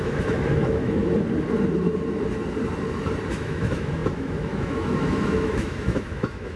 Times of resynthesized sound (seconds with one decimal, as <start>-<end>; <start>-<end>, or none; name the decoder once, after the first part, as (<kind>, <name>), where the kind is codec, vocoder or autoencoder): 0.0-1.0 (autoencoder, DAC-VAE); 3.3-6.6